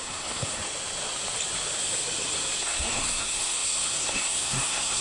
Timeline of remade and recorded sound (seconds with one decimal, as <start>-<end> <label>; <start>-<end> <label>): 0.0-0.6 remade; 0.6-2.6 recorded; 2.6-5.0 remade

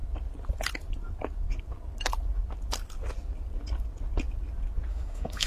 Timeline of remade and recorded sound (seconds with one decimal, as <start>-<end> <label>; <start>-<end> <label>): 0.0-4.9 recorded; 4.9-5.5 remade

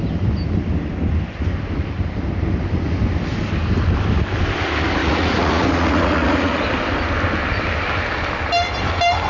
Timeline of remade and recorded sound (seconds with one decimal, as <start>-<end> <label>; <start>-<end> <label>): 0.0-5.0 recorded; 5.0-6.6 remade; 6.6-9.3 recorded